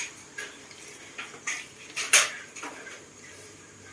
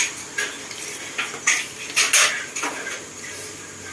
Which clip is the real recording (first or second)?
second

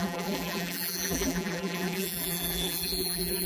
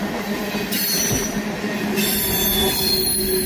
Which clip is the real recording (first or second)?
second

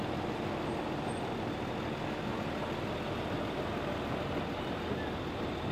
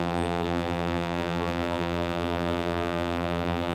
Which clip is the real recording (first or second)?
first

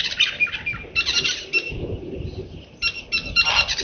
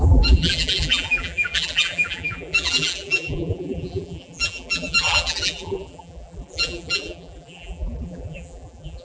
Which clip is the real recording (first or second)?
first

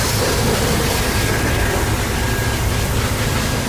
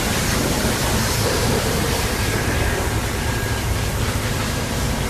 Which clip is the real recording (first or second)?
first